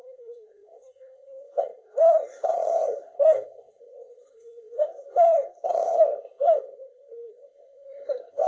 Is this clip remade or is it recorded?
remade